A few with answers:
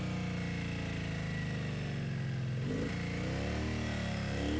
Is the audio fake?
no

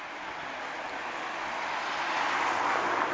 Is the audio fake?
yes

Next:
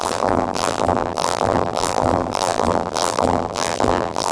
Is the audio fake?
yes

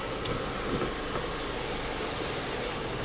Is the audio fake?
no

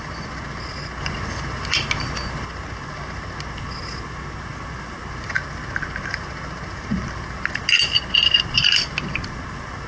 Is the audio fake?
no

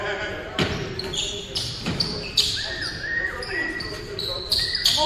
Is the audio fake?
yes